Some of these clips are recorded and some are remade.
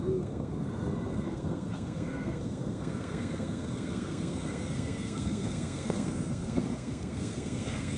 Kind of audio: remade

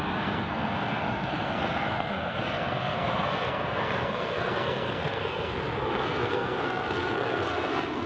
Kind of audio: remade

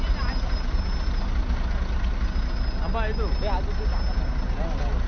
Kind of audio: recorded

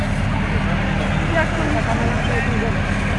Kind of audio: recorded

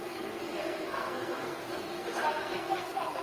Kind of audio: remade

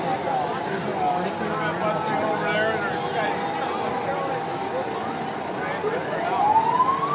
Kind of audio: recorded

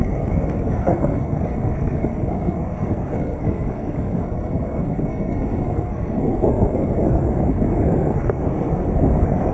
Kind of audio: remade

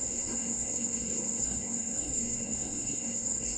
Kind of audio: remade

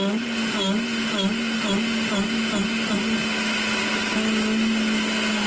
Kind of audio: recorded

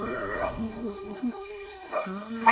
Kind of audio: remade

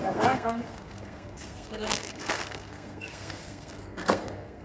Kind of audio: remade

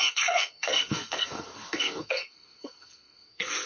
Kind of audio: remade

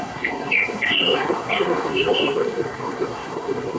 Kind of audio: remade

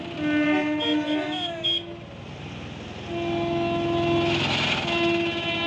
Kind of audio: recorded